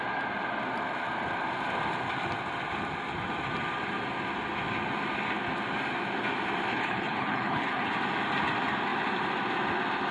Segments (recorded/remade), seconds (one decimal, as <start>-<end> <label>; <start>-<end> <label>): 0.0-6.7 recorded; 6.7-7.9 remade; 7.9-10.1 recorded